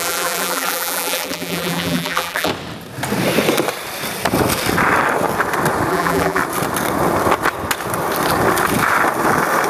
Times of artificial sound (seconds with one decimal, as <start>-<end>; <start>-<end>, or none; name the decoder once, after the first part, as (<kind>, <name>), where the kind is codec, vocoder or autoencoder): 0.0-2.5 (vocoder, BigVGAN v2); 5.9-6.4